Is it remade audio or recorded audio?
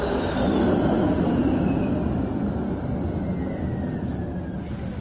recorded